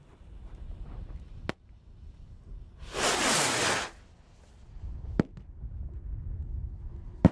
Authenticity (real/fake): real